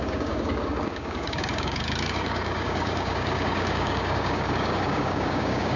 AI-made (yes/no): yes